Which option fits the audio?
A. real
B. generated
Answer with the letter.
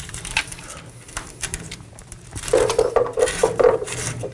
B